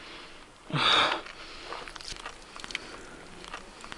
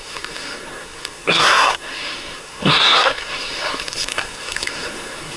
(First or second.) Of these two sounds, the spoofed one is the second